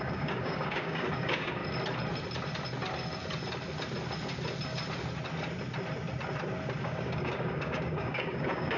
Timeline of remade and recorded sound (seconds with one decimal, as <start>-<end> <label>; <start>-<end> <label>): 0.0-1.6 remade; 1.6-6.8 recorded; 6.8-8.8 remade